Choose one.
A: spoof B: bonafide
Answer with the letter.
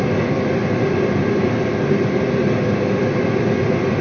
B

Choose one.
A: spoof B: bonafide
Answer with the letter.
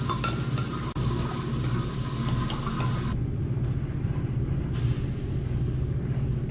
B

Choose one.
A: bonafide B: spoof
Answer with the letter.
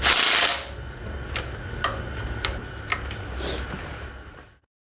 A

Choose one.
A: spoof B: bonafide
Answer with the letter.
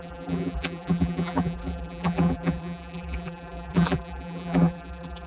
A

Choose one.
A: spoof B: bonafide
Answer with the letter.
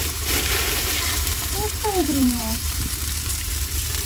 A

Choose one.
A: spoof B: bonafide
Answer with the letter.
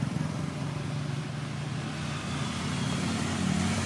A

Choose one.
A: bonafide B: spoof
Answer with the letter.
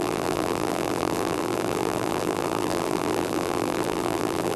B